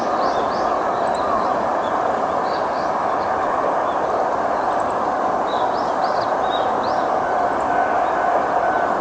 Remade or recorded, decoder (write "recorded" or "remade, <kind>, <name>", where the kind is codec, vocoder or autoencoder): recorded